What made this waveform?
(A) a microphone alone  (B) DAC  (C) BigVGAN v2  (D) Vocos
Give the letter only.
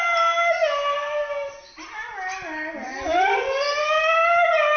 A